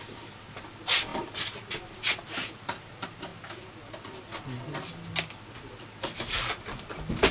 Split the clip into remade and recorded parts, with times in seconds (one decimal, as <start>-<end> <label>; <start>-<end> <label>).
0.0-3.3 remade; 3.3-5.8 recorded; 5.8-7.3 remade